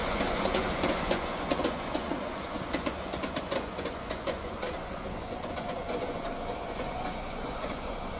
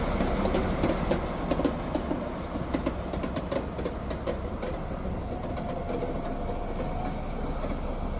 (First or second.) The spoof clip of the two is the first